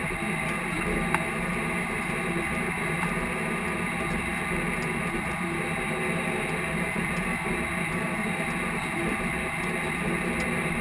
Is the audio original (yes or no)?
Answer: yes